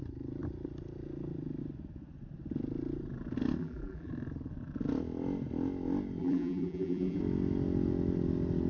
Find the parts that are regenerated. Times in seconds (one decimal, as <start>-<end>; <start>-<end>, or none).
3.6-4.1; 6.2-7.2